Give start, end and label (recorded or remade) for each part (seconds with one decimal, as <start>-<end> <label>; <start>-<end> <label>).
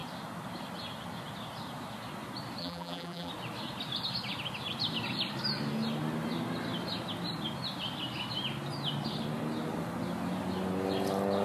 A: 0.0-2.6 recorded; 2.6-3.3 remade; 3.3-11.4 recorded